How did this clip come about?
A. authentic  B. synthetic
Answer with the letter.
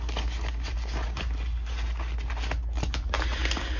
A